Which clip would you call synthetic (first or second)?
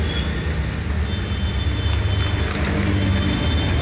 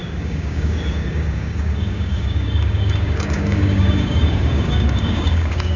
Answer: second